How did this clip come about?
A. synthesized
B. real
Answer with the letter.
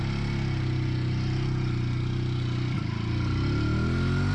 B